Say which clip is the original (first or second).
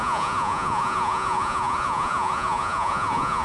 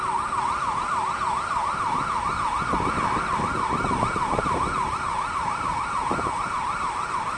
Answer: second